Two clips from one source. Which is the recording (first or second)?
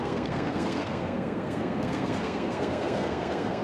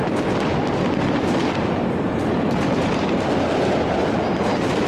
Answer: second